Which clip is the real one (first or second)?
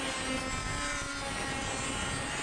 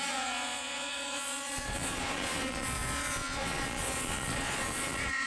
first